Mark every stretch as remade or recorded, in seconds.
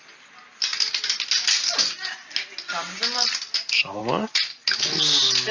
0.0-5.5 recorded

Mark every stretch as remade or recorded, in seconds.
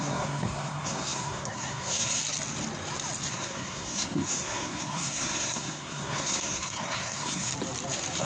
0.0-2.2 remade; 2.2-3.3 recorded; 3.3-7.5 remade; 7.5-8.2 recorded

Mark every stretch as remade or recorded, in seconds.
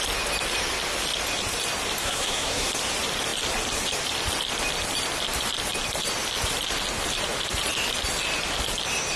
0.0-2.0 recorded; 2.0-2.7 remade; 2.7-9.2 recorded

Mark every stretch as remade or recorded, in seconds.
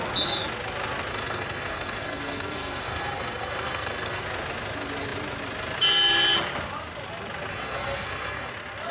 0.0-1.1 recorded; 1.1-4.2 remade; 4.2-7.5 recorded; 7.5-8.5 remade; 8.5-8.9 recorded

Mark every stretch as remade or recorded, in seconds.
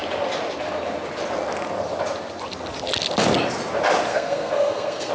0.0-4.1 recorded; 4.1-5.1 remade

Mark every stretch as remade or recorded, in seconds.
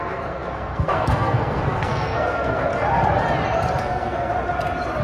0.0-2.7 remade; 2.7-3.8 recorded; 3.8-4.3 remade; 4.3-5.0 recorded